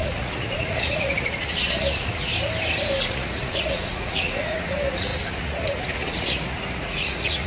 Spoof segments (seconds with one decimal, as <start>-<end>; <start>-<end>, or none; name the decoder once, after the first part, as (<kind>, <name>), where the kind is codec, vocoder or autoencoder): 0.0-2.3 (vocoder, Vocos); 3.0-7.5